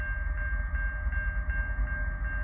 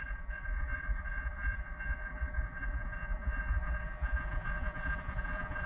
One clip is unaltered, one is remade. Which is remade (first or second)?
second